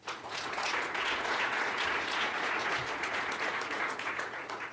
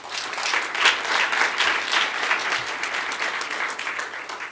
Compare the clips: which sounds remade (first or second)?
first